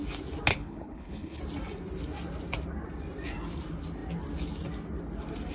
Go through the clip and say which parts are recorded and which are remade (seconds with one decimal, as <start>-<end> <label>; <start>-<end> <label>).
0.0-0.5 recorded; 0.5-1.4 remade; 1.4-5.5 recorded

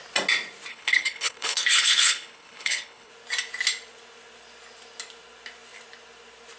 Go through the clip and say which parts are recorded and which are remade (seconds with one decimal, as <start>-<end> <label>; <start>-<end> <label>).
0.0-0.7 recorded; 0.7-3.1 remade; 3.1-6.6 recorded